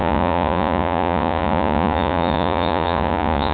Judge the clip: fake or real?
fake